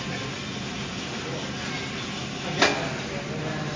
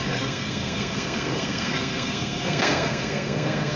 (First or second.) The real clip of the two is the first